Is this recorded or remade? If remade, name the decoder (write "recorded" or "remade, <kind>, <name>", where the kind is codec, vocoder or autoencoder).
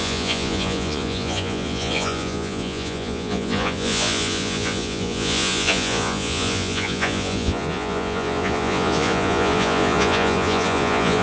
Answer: remade, vocoder, Vocos